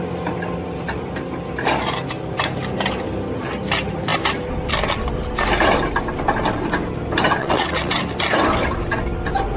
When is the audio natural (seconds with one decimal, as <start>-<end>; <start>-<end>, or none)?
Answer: 0.0-7.4; 8.0-9.6